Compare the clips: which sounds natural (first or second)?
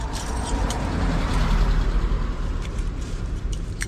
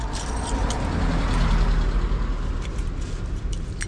second